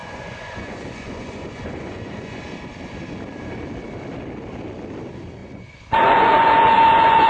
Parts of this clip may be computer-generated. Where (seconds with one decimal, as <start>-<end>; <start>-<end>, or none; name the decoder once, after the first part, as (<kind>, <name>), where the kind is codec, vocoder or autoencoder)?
0.0-2.4 (vocoder, Vocos); 5.4-7.3